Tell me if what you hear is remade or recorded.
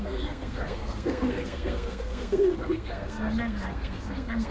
remade